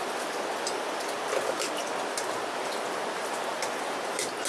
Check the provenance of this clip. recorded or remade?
recorded